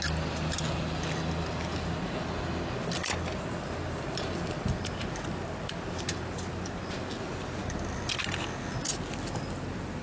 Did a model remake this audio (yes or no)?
no